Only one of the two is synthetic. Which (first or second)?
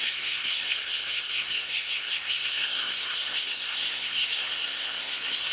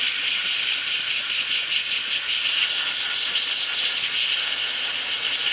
first